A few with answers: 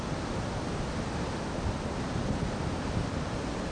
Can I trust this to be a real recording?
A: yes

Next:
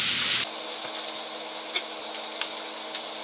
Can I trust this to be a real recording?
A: yes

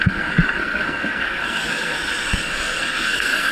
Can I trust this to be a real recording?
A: no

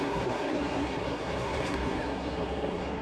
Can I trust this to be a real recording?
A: no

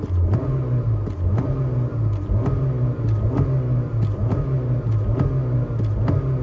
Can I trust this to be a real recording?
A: yes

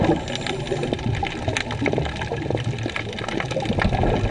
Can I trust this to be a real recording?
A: yes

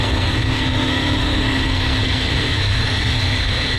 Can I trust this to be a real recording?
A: no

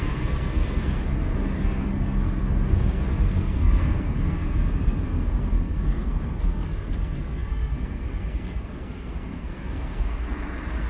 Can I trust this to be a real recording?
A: no